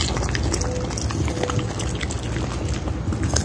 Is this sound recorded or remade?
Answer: recorded